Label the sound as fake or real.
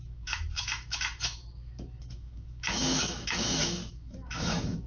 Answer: fake